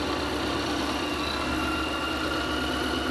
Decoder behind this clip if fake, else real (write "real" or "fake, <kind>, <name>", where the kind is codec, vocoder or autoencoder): real